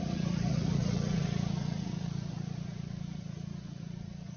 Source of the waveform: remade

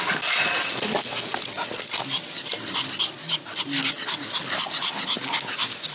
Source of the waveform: recorded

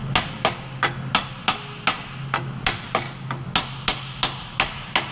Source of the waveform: recorded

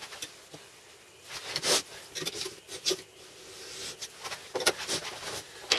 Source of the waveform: recorded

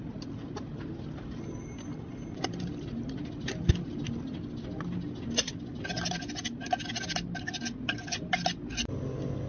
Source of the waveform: recorded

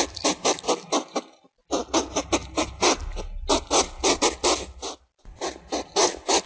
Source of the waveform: recorded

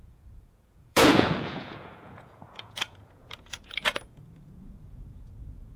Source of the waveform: remade